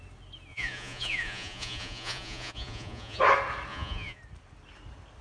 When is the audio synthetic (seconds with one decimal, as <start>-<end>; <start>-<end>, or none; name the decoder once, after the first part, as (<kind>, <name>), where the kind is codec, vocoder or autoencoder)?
0.5-3.2 (vocoder, Vocos); 3.7-4.2